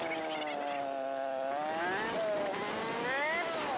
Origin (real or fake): real